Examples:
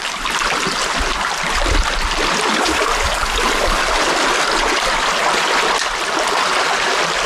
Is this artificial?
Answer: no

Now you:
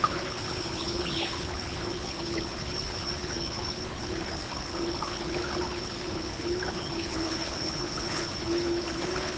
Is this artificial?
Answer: yes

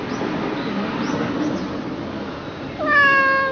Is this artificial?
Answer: no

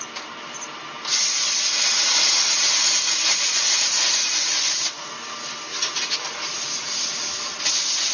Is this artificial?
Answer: no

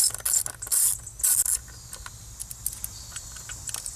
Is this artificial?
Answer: no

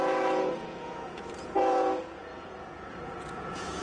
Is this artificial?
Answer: yes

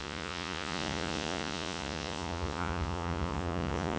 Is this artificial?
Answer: yes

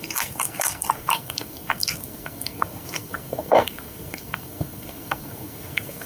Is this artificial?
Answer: yes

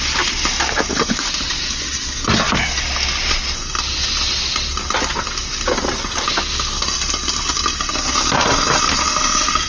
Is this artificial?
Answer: no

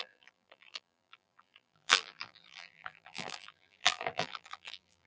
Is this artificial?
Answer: yes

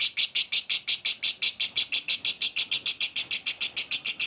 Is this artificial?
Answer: no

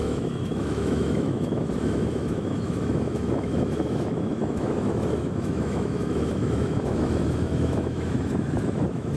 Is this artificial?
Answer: yes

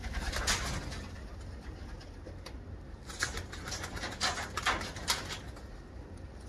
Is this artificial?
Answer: no